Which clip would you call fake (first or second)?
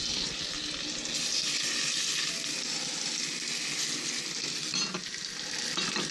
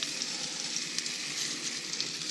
second